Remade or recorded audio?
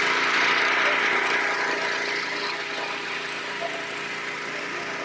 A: recorded